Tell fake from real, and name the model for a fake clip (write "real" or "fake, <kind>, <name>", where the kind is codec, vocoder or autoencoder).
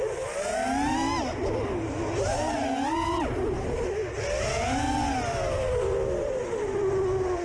real